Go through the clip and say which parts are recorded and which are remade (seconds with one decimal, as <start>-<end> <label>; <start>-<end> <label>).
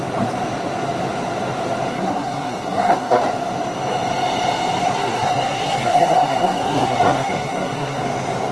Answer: 0.0-1.9 recorded; 1.9-3.2 remade; 3.2-4.8 recorded; 4.8-8.0 remade; 8.0-8.5 recorded